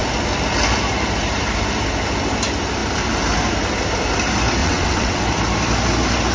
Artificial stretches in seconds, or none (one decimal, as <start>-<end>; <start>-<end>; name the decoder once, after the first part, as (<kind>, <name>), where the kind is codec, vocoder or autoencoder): 4.6-5.2 (vocoder, WaveNeXt)

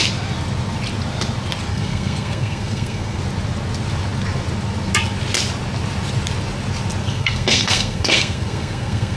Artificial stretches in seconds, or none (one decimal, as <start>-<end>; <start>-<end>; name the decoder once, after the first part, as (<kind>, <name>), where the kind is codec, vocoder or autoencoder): 1.7-3.2 (codec, SNAC); 7.0-9.2

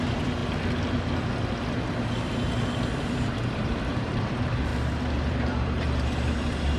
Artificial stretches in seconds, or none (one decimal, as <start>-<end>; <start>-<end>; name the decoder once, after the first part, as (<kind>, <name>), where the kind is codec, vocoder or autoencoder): 0.0-0.4 (vocoder, BigVGAN v2); 3.0-4.7; 5.3-6.8